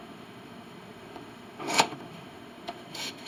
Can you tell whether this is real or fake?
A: fake